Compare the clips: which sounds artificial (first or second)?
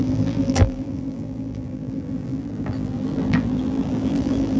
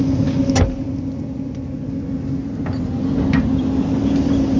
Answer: first